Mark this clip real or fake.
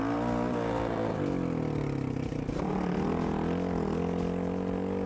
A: real